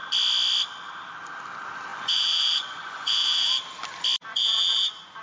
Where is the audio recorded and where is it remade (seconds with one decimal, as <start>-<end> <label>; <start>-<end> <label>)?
0.0-1.9 recorded; 1.9-3.6 remade; 3.6-4.3 recorded; 4.3-5.2 remade